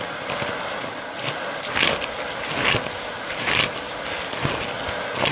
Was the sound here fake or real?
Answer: real